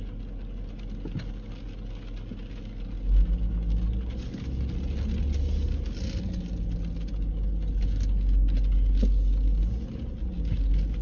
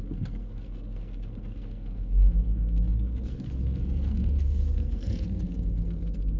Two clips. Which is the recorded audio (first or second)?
first